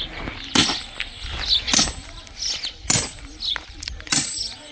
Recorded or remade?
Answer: recorded